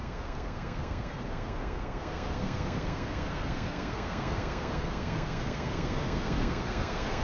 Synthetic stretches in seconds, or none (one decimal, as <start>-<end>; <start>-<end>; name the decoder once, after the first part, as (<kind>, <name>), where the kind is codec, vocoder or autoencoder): 0.0-7.2 (codec, SNAC)